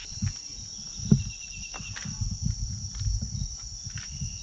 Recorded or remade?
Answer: recorded